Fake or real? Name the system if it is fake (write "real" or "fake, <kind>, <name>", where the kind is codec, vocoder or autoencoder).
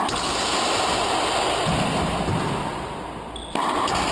real